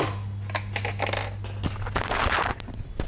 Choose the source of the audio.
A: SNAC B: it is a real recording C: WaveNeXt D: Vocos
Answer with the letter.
B